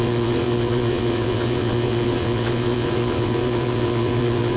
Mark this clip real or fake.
fake